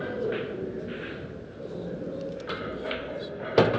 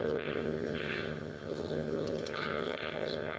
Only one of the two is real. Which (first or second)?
first